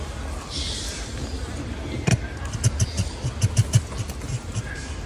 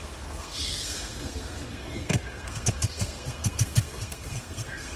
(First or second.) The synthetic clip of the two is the second